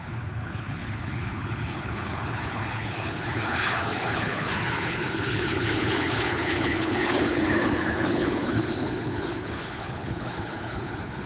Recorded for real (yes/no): no